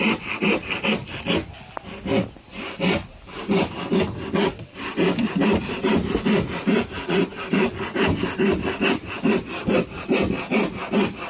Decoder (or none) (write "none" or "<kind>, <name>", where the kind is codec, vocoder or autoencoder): none